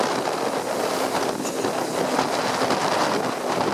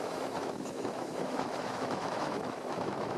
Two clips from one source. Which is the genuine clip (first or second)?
first